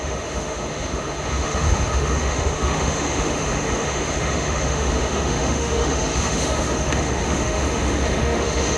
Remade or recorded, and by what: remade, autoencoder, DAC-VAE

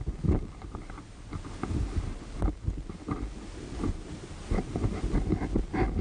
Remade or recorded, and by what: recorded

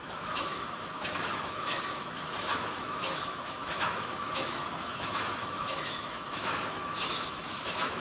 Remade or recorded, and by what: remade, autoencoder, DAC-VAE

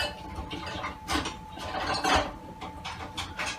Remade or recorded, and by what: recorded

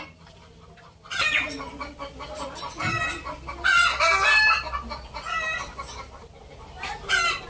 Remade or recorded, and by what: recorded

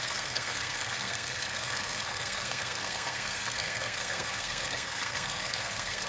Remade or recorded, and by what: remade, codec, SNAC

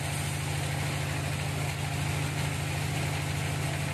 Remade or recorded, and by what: recorded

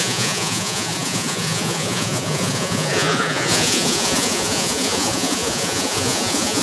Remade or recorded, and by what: remade, vocoder, Vocos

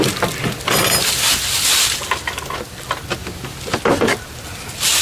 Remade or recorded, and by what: recorded